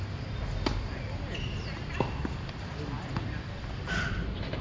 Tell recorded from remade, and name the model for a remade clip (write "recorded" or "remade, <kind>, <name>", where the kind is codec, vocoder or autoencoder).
recorded